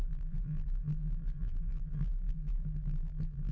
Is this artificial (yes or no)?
yes